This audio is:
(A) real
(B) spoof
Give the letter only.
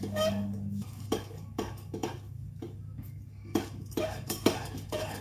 B